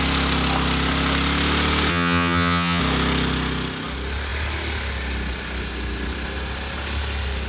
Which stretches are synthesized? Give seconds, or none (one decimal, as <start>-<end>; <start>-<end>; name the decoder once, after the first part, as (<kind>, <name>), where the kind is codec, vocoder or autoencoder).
1.9-2.8 (vocoder, HiFi-GAN)